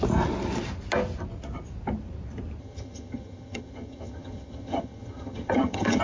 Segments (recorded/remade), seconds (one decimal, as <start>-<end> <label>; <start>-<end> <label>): 0.0-2.6 recorded; 2.6-6.0 remade